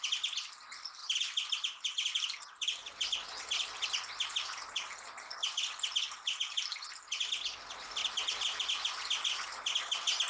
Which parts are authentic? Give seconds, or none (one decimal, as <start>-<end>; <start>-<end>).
0.0-1.0; 3.9-10.3